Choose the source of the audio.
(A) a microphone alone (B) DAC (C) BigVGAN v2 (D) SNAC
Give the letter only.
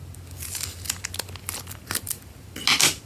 A